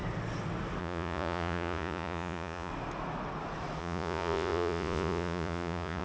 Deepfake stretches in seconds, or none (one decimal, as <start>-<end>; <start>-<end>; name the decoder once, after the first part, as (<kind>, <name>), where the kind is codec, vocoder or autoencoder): 0.8-2.7 (vocoder, Vocos); 3.8-6.0